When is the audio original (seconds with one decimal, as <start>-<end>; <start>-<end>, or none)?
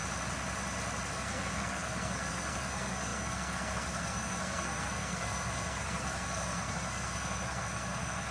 0.0-1.1